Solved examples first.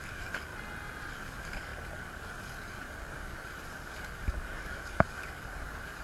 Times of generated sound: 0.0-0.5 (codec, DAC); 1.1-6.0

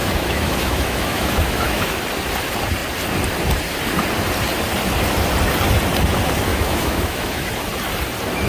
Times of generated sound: 0.0-2.0 (autoencoder, DAC-VAE); 6.5-7.5

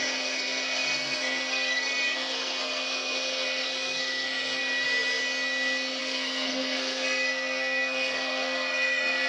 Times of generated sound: 0.0-4.6 (codec, SNAC); 6.0-9.3

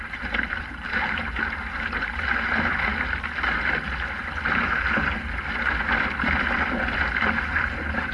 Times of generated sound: 0.0-2.9 (vocoder, BigVGAN v2)

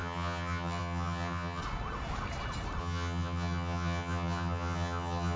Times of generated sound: 0.0-1.6 (vocoder, HiFi-GAN); 2.8-5.4

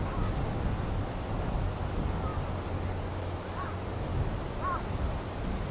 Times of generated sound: none

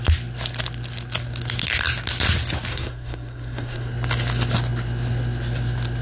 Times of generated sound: 2.7-3.9 (codec, SNAC)